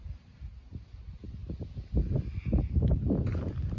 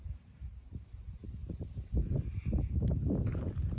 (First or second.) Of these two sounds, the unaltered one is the first